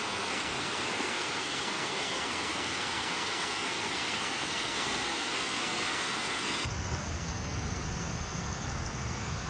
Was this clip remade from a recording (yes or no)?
yes